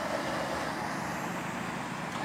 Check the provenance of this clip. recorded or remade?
recorded